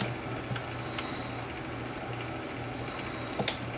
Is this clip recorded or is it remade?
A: recorded